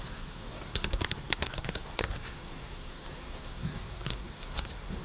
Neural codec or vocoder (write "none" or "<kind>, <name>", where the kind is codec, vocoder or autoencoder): codec, SNAC